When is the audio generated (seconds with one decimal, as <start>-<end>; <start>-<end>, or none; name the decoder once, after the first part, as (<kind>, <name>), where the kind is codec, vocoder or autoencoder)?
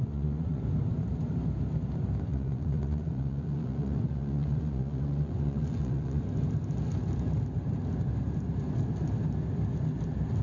0.0-0.6 (vocoder, Vocos); 2.3-6.2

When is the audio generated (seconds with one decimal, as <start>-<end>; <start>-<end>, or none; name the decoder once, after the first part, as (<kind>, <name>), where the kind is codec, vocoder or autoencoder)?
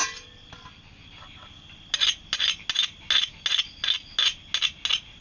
none